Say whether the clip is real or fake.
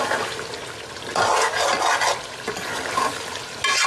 real